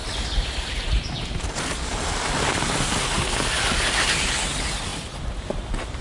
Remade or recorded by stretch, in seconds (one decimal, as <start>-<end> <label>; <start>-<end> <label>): 0.0-6.0 recorded